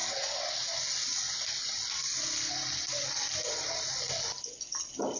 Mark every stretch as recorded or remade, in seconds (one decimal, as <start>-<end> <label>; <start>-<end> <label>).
0.0-5.2 recorded